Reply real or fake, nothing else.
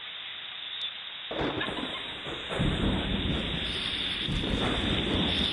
real